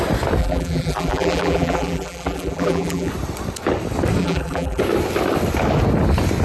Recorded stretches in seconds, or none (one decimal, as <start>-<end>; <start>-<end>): 0.0-0.4; 3.1-4.2; 4.8-6.4